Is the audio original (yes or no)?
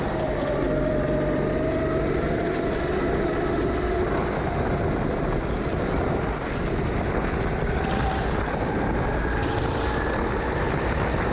yes